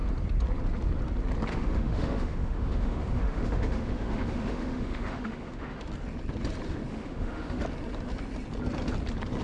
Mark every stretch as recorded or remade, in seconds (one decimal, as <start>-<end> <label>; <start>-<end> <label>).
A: 0.0-1.5 recorded; 1.5-5.9 remade; 5.9-6.9 recorded; 6.9-7.6 remade; 7.6-9.4 recorded